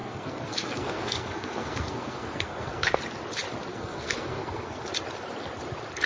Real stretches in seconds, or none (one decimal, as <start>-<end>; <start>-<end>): 3.0-3.7; 4.8-6.1